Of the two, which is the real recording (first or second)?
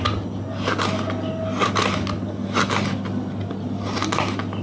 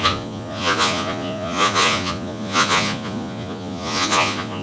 first